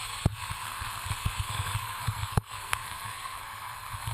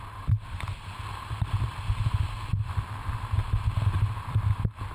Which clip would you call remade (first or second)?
first